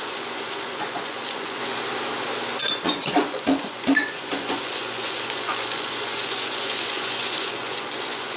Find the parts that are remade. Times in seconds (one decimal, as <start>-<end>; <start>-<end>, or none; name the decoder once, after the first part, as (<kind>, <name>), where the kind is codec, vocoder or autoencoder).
0.0-1.6 (vocoder, Vocos); 2.6-8.4